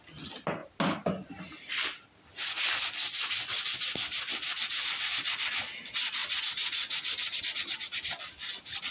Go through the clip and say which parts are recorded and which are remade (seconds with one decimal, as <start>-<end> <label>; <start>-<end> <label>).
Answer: 0.0-8.9 recorded